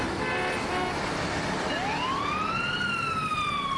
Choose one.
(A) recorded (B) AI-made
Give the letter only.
A